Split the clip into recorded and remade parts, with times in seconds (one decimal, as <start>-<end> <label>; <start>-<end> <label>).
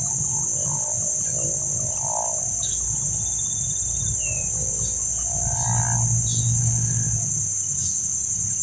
0.0-8.6 recorded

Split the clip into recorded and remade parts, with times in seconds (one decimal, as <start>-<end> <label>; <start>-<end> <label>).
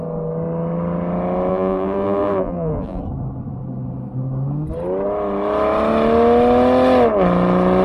0.0-1.5 recorded; 1.5-3.0 remade; 3.0-7.8 recorded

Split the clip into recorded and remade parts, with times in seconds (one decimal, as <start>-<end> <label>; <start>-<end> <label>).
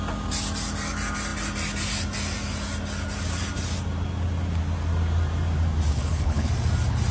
0.0-5.9 recorded; 5.9-6.5 remade; 6.5-7.1 recorded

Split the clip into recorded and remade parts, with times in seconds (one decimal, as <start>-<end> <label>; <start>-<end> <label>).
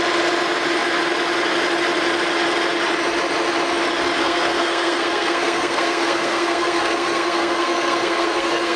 0.0-4.2 recorded; 4.2-8.8 remade